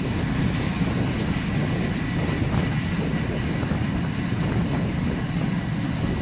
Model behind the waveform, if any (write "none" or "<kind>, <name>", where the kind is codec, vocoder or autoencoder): none